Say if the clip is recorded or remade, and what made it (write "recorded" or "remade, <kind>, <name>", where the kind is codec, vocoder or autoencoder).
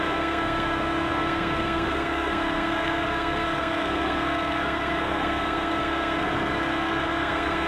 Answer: remade, codec, SNAC